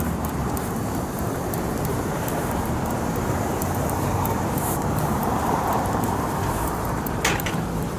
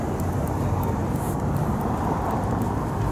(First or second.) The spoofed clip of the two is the first